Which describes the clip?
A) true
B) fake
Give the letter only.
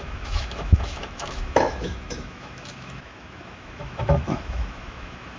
B